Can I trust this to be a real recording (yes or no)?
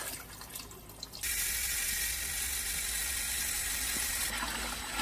yes